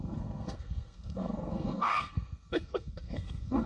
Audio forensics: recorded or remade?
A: remade